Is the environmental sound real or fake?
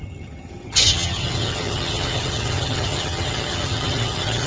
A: fake